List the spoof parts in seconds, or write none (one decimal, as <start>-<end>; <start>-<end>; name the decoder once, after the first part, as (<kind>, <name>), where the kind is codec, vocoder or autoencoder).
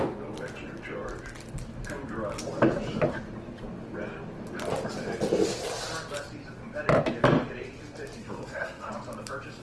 8.2-8.9 (codec, SNAC)